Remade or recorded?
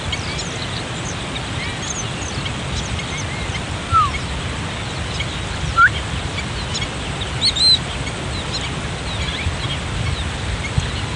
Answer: recorded